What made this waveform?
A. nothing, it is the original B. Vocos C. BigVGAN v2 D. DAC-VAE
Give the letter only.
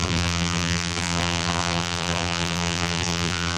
C